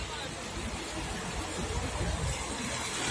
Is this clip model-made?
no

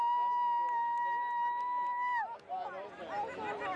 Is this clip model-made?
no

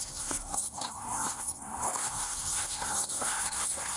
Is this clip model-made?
yes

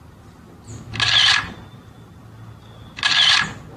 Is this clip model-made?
no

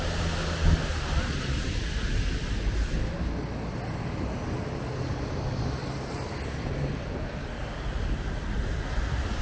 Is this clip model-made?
no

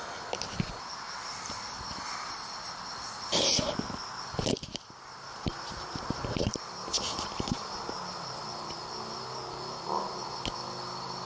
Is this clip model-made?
no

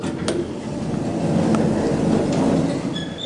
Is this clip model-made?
no